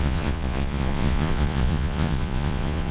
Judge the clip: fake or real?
fake